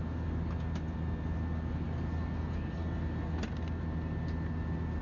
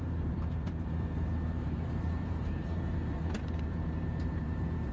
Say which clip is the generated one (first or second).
second